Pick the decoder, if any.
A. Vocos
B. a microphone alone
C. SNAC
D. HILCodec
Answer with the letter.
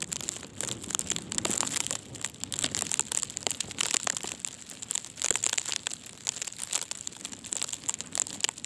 B